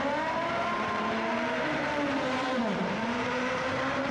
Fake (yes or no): yes